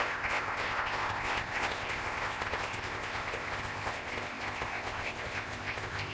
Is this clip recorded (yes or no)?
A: no